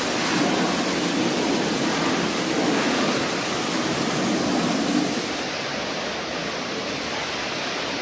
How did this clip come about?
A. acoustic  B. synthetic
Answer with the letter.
B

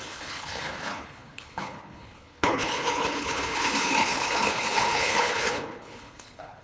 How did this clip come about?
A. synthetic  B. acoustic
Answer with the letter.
A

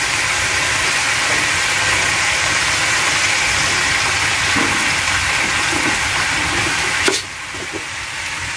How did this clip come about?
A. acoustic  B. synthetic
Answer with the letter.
A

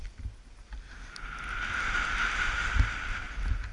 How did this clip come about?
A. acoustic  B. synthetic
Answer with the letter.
A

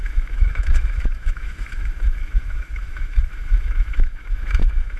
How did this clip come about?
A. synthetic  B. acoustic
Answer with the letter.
A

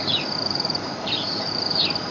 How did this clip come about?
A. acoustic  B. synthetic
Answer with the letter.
B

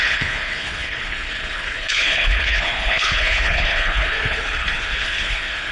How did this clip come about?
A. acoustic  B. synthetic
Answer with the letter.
B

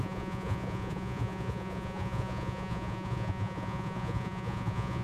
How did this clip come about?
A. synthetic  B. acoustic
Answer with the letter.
A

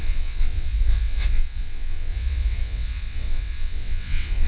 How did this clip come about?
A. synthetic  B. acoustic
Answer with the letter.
A